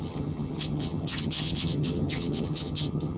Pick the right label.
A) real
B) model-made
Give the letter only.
B